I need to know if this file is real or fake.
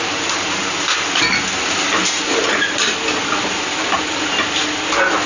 real